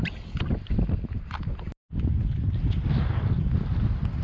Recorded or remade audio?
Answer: recorded